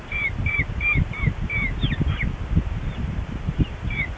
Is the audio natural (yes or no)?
yes